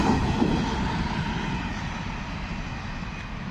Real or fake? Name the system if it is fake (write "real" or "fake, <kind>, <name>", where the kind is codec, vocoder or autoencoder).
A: real